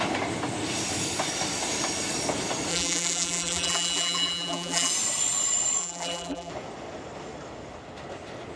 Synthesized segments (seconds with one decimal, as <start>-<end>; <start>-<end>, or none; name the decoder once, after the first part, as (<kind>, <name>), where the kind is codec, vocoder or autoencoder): 2.7-4.9 (vocoder, BigVGAN v2); 5.8-6.5